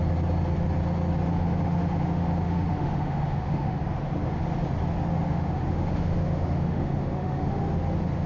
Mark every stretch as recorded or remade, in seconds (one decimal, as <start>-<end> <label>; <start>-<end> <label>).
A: 0.0-1.2 recorded; 1.2-3.8 remade; 3.8-5.3 recorded; 5.3-7.5 remade; 7.5-8.3 recorded

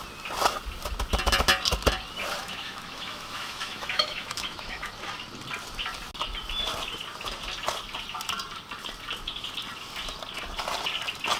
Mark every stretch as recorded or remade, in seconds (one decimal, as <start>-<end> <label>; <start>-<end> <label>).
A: 0.0-2.4 recorded; 2.4-4.9 remade; 4.9-11.4 recorded

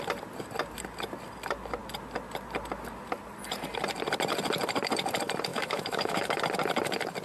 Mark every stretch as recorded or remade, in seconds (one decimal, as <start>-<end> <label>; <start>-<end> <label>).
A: 0.0-5.5 recorded; 5.5-6.4 remade; 6.4-7.2 recorded